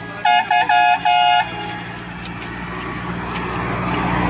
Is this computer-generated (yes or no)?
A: no